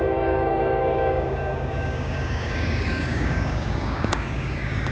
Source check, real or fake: fake